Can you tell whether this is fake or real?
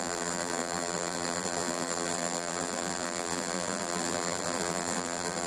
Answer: fake